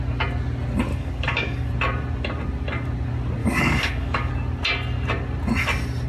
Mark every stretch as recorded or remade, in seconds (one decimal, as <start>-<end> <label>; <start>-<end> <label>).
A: 0.0-0.9 recorded; 0.9-1.7 remade; 1.7-3.4 recorded; 3.4-4.3 remade; 4.3-6.1 recorded